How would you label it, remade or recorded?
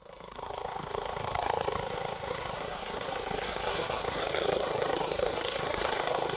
remade